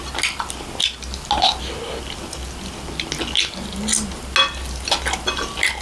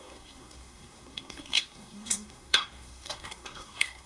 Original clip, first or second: first